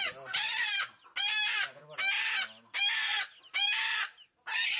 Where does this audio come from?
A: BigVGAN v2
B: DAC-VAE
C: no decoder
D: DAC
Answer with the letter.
C